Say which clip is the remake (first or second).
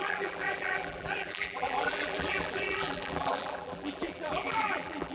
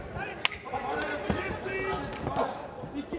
first